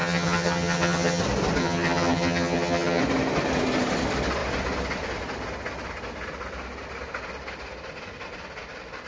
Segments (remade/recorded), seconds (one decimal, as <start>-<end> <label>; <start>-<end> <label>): 0.0-1.2 remade; 1.2-1.6 recorded; 1.6-3.0 remade; 3.0-9.1 recorded